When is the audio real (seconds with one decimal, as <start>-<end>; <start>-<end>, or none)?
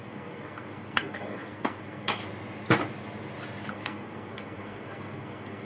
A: 2.2-3.7